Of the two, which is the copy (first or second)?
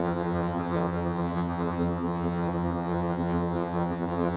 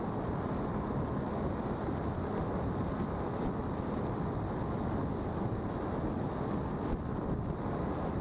first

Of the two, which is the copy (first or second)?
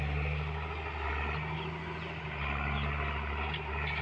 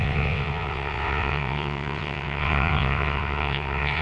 second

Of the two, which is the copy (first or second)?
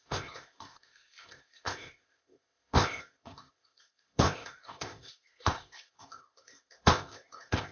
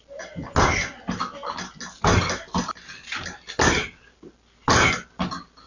first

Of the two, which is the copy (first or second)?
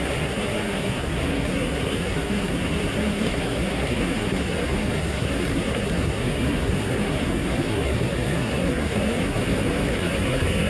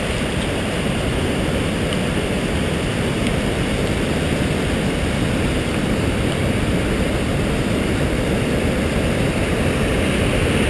first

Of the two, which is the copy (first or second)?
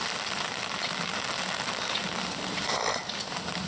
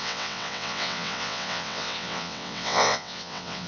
second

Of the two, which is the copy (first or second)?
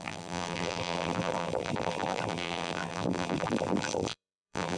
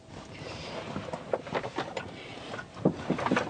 first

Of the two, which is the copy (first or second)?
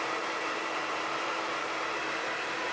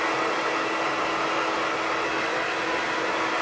first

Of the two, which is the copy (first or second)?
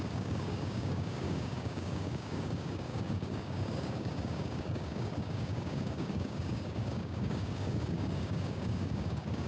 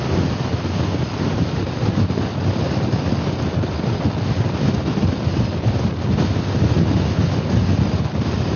first